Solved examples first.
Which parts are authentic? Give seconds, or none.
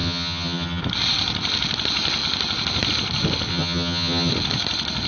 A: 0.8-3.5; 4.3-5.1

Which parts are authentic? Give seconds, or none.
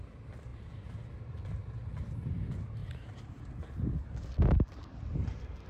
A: 0.0-2.8; 3.4-5.7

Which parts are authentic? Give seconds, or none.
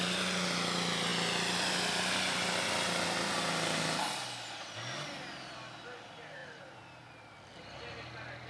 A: 0.0-8.5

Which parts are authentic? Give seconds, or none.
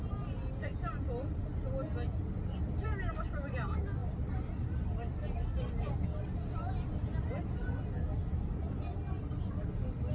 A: 0.0-10.1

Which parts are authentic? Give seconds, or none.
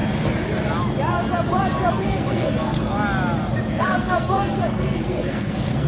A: 0.0-1.9; 2.9-3.8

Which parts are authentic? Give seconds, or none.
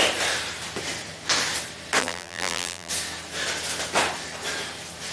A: 0.0-2.0; 2.9-5.1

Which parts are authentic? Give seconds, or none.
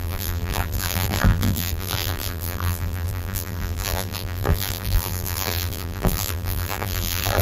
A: none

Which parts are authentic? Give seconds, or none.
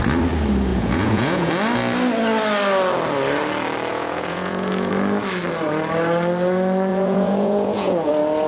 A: 0.0-0.7; 1.5-3.9; 4.9-6.9; 8.1-8.5